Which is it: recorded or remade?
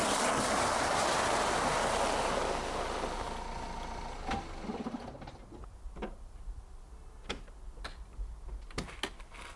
recorded